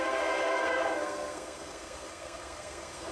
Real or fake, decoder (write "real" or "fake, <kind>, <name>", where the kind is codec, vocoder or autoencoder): fake, codec, SNAC